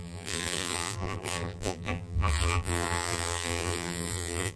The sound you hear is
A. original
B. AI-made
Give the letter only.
B